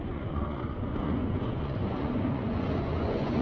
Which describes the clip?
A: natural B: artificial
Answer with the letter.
B